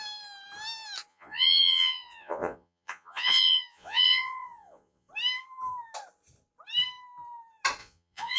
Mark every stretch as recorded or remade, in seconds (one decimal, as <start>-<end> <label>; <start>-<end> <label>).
0.0-1.1 recorded; 1.1-5.1 remade; 5.1-7.8 recorded; 7.8-8.4 remade